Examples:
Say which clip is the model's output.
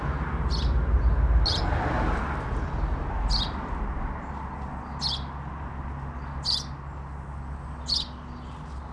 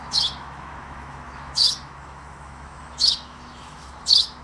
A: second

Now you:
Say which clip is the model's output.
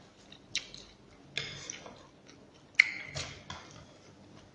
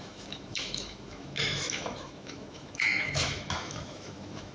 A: second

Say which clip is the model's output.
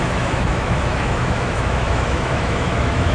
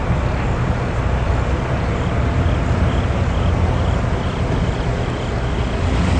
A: first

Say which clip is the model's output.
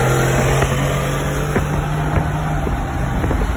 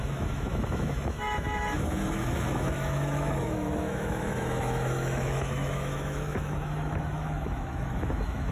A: second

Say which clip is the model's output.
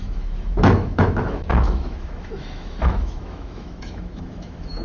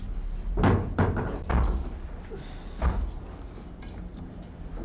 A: first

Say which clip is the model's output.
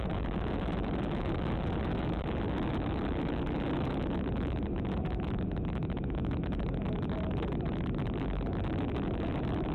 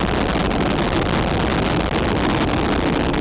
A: first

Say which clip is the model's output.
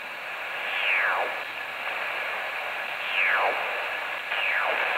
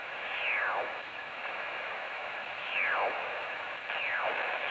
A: second